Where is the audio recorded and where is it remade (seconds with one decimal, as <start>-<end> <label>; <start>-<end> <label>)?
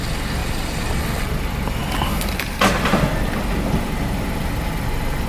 0.0-5.3 recorded